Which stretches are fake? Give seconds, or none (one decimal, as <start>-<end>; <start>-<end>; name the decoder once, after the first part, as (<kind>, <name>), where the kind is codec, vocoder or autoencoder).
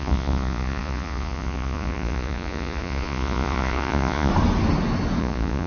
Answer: 0.0-4.3 (vocoder, Vocos); 5.2-5.7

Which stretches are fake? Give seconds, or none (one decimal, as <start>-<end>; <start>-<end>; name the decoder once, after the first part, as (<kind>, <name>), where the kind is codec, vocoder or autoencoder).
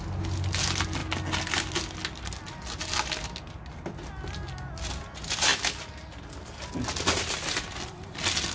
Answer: none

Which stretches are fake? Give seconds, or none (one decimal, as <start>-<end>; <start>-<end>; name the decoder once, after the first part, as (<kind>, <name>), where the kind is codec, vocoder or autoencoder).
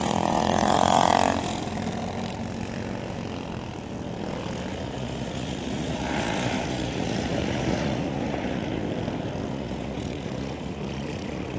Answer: 0.0-1.1 (vocoder, Vocos); 4.7-8.8; 9.5-11.6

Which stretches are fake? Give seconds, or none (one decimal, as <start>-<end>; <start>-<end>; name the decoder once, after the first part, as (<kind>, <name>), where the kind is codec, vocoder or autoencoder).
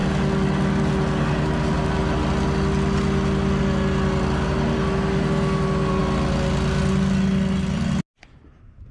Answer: none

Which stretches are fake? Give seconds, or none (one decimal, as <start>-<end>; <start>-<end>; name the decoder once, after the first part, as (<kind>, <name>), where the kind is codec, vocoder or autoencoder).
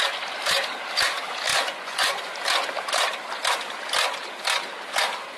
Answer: 1.5-2.3 (vocoder, Vocos)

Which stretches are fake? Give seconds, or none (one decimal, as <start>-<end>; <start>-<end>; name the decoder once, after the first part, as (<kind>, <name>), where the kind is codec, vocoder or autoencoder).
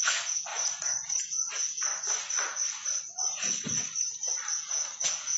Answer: 0.0-0.5 (vocoder, Vocos); 1.2-1.9; 4.5-5.4